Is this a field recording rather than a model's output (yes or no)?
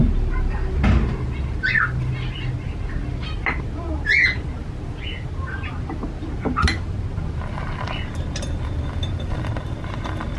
yes